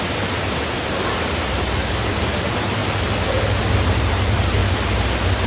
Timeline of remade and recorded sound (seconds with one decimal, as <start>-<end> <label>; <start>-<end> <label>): 0.0-2.8 remade; 2.8-3.6 recorded; 3.6-4.6 remade; 4.6-5.5 recorded